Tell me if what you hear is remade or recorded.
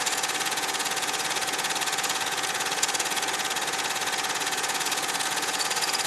remade